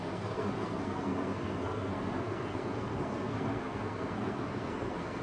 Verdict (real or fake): fake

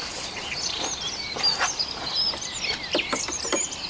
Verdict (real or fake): fake